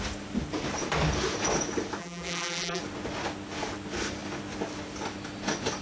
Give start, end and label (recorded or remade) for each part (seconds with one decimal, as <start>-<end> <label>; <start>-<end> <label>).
0.0-2.0 recorded; 2.0-2.8 remade; 2.8-5.8 recorded